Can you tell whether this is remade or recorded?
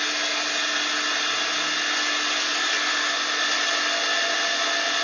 recorded